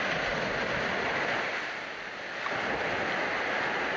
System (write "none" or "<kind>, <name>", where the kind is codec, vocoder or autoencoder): none